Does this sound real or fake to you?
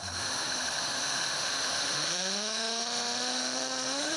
fake